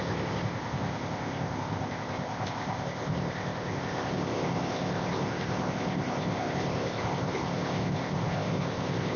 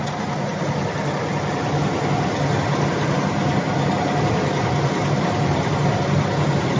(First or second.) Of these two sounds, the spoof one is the first